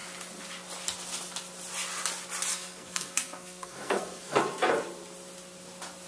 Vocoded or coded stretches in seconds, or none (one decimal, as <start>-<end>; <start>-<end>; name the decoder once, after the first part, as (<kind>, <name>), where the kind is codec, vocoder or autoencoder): 2.5-4.4 (codec, SNAC)